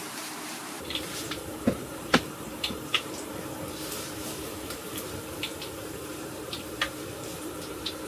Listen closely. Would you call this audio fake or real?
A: fake